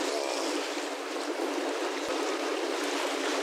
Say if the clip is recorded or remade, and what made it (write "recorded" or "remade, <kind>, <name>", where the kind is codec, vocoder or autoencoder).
recorded